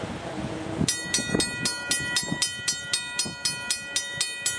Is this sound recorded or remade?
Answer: recorded